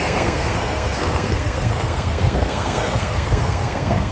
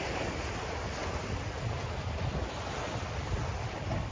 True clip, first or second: second